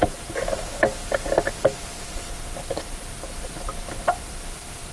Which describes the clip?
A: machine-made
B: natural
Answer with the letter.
B